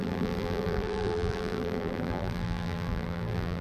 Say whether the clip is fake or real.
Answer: fake